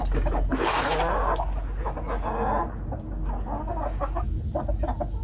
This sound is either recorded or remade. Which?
recorded